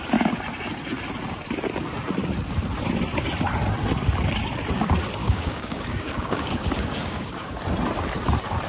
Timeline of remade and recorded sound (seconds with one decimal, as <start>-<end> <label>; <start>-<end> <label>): 0.0-5.2 recorded; 5.2-7.6 remade; 7.6-8.7 recorded